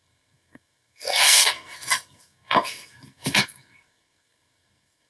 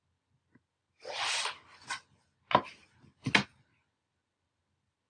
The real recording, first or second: second